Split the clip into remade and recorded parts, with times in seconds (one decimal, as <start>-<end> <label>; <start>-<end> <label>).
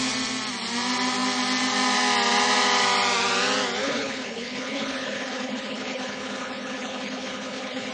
0.0-3.8 recorded; 3.8-7.9 remade